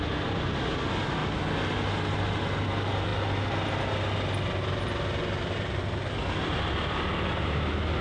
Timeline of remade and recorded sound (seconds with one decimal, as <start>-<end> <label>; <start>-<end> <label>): 0.0-8.0 recorded

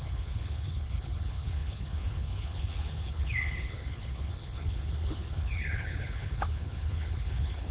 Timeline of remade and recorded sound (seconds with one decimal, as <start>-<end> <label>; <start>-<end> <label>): 0.0-7.7 remade

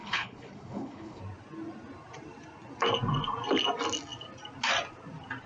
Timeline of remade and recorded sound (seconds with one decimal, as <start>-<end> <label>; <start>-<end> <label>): 0.0-1.2 remade; 1.2-5.5 recorded